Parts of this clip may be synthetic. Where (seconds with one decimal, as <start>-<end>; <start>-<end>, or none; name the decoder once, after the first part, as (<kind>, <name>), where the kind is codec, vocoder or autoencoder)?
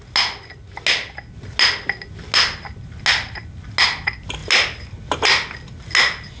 none